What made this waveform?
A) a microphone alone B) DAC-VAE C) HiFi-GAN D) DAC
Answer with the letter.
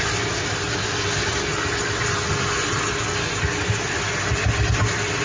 A